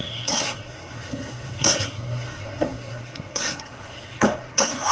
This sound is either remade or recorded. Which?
remade